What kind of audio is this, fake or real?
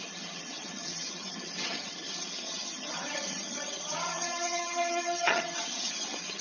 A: fake